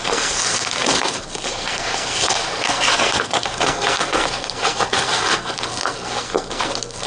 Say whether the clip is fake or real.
fake